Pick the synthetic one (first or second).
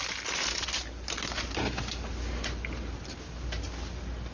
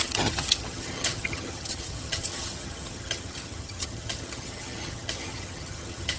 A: second